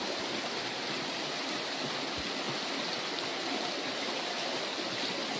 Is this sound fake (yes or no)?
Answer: no